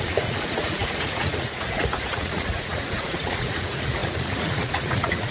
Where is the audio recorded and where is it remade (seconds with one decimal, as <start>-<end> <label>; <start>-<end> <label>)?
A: 0.0-5.3 remade